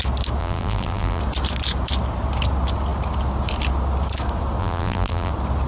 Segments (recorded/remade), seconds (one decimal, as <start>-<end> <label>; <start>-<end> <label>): 0.0-0.4 recorded; 0.4-1.2 remade; 1.2-4.6 recorded; 4.6-5.3 remade; 5.3-5.7 recorded